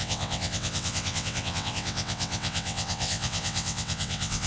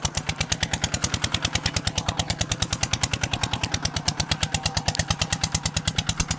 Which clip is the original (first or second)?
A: second